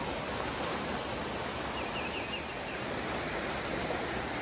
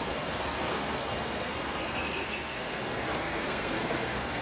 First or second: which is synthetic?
second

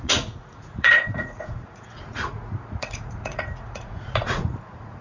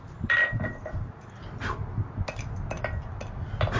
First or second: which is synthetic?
first